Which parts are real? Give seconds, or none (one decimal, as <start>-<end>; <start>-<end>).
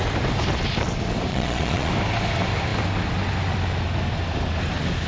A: 0.0-1.3; 1.9-5.1